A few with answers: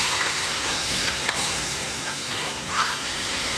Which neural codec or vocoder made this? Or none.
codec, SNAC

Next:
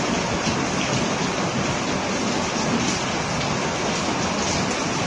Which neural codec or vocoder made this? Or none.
none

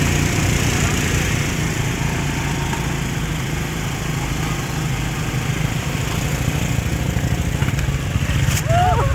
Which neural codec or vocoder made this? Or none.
none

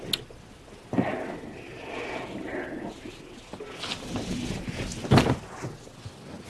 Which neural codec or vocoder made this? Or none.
none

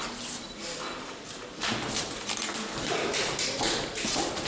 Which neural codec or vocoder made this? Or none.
none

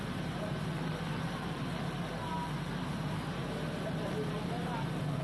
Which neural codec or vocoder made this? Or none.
none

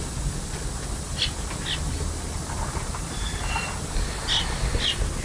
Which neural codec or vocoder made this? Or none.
none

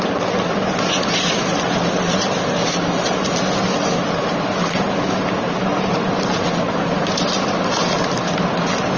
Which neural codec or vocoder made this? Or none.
none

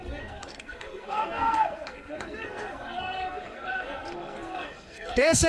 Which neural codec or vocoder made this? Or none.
codec, SNAC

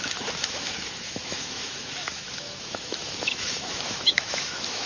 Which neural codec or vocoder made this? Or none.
autoencoder, DAC-VAE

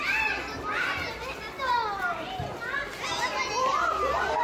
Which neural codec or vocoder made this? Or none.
none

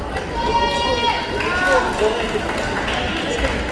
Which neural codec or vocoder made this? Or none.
none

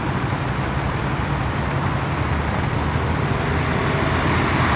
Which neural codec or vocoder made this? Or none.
none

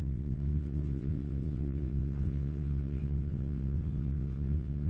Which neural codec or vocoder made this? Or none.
vocoder, WaveNeXt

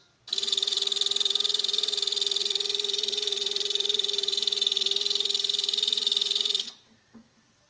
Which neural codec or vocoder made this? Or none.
vocoder, BigVGAN v2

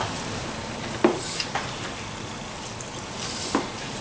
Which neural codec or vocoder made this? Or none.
none